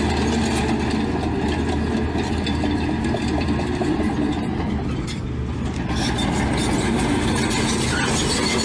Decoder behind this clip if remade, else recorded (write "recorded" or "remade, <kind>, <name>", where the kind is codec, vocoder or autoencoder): recorded